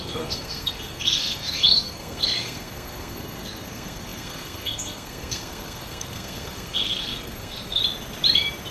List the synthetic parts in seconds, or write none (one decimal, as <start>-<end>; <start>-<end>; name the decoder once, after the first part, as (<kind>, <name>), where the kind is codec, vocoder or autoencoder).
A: 0.0-7.8 (codec, SNAC)